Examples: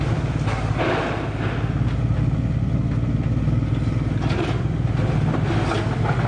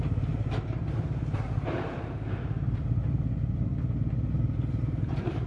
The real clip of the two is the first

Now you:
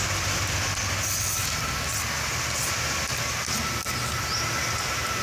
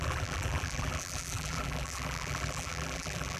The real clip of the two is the first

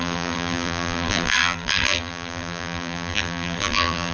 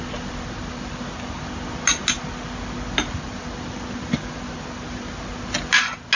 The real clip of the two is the second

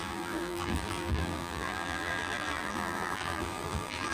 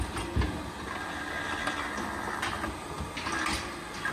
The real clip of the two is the second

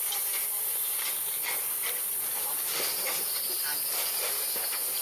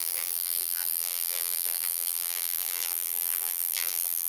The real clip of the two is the first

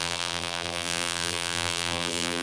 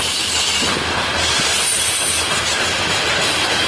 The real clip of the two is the second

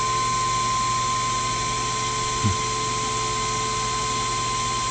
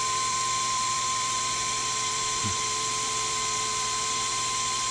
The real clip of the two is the first